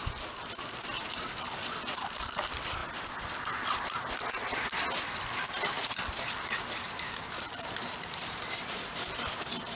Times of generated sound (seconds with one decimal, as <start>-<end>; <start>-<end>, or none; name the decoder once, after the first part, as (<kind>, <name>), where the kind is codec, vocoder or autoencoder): 2.8-4.1 (vocoder, BigVGAN v2)